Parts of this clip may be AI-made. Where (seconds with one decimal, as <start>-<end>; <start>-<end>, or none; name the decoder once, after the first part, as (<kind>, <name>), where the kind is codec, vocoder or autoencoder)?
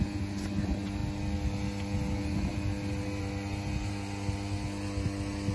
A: none